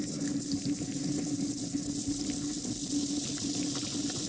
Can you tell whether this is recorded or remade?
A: recorded